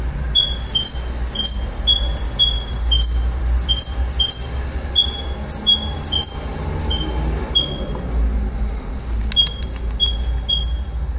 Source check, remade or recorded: recorded